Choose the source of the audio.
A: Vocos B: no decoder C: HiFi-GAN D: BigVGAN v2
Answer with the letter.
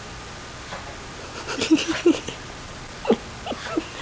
B